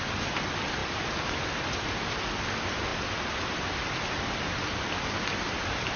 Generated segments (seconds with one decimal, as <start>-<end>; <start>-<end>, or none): none